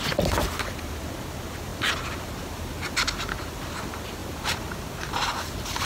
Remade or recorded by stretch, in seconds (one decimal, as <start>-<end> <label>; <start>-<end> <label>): 0.0-4.2 recorded; 4.2-4.8 remade; 4.8-5.9 recorded